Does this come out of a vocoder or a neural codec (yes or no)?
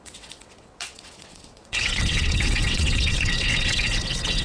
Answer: yes